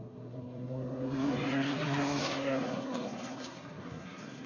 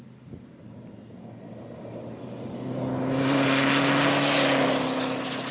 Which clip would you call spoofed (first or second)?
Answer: first